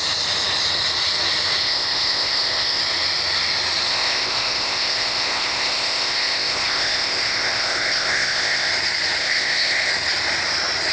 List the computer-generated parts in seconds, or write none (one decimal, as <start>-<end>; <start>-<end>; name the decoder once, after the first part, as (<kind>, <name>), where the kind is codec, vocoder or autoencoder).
1.6-2.8 (codec, ZipCodec); 3.9-8.7; 9.2-9.9